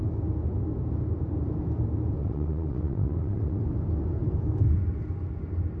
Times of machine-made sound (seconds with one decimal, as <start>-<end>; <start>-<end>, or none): 2.2-3.6